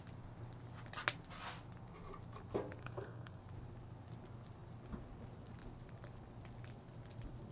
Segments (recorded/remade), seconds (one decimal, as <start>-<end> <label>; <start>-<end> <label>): 0.0-2.8 recorded; 2.8-3.4 remade; 3.4-7.5 recorded